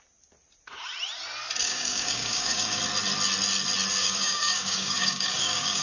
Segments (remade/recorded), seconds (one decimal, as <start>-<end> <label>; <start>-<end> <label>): 0.0-1.6 recorded; 1.6-2.8 remade; 2.8-4.0 recorded; 4.0-5.8 remade